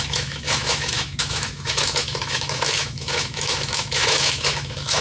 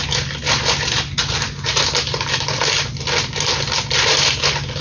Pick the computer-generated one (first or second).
first